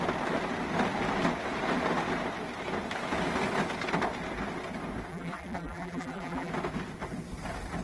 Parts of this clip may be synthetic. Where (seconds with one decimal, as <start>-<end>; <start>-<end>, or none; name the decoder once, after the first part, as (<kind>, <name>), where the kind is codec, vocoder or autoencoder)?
5.1-6.5 (vocoder, BigVGAN v2)